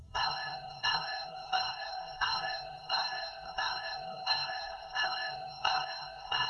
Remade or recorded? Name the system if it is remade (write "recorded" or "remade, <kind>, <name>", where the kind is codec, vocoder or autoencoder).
remade, codec, SNAC